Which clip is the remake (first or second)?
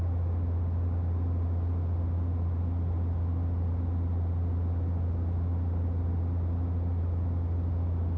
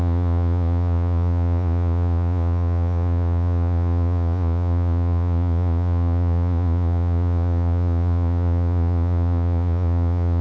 second